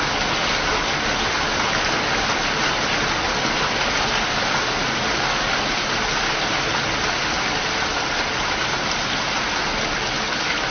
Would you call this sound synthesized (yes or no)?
no